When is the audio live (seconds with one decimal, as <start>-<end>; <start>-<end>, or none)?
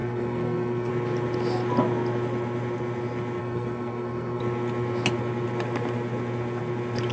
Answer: 0.9-3.4; 4.4-7.1